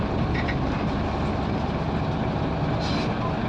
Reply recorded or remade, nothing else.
recorded